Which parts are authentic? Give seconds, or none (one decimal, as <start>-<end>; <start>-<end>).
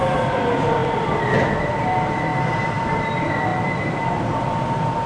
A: 3.5-4.2